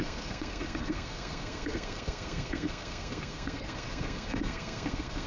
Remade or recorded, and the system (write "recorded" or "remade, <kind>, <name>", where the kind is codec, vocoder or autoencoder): remade, codec, SNAC